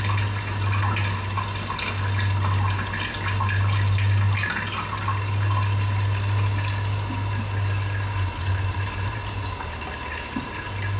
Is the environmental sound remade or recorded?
recorded